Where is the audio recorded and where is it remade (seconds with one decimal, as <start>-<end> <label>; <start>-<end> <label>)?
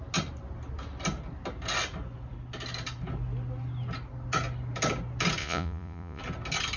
0.0-5.4 recorded; 5.4-6.2 remade; 6.2-6.8 recorded